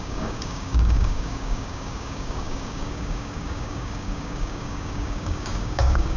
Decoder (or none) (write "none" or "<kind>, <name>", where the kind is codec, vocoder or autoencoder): codec, DAC